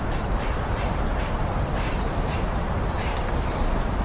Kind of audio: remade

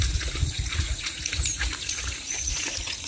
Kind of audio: remade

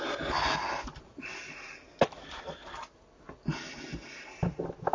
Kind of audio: recorded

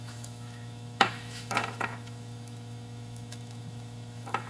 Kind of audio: remade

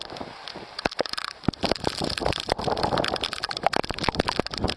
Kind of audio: recorded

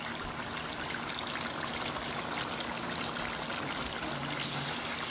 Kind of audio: recorded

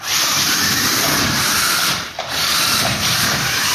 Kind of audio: remade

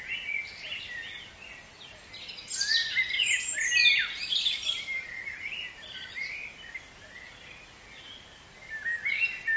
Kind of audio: recorded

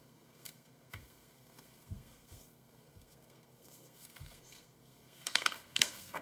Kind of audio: remade